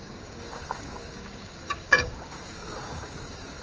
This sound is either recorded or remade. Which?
remade